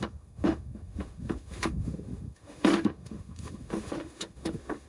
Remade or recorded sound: remade